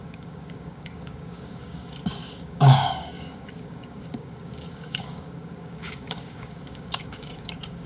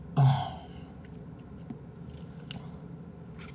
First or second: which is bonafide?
second